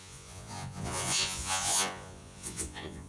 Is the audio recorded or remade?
remade